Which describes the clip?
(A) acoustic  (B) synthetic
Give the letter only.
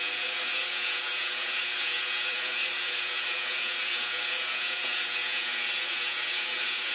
B